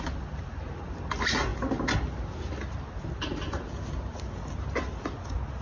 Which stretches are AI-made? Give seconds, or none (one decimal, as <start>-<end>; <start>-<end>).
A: none